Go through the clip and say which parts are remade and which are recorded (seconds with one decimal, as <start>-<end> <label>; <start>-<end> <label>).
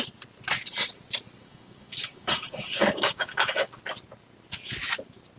0.0-1.4 recorded; 1.4-3.7 remade; 3.7-5.4 recorded